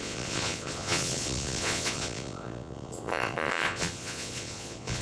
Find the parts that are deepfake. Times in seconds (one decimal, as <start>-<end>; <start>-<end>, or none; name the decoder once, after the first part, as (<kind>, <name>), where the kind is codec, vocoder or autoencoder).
0.0-5.0 (vocoder, Vocos)